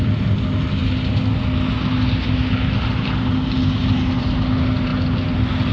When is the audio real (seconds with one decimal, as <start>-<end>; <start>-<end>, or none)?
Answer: 0.0-5.7